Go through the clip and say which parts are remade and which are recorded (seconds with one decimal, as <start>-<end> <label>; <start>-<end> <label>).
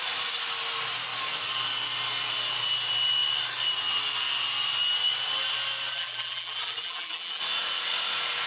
0.0-5.9 recorded; 5.9-7.4 remade; 7.4-8.5 recorded